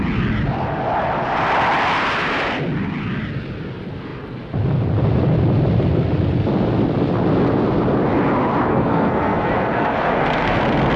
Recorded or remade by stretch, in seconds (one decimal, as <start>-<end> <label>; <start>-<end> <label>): 0.0-8.7 recorded; 8.7-10.6 remade; 10.6-11.0 recorded